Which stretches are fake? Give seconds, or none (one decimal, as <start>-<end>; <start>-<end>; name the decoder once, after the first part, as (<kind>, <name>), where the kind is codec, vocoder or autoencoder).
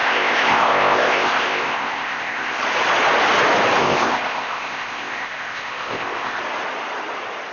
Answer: 0.0-2.6 (codec, ZipCodec); 3.8-6.4